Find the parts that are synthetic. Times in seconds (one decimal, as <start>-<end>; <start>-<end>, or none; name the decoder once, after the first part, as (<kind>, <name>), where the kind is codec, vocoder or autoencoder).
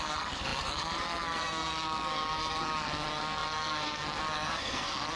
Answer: 0.0-5.2 (codec, SNAC)